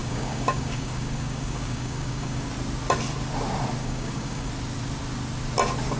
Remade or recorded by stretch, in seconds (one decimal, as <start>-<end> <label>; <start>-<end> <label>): 0.0-2.5 remade; 2.5-3.8 recorded; 3.8-4.5 remade; 4.5-6.0 recorded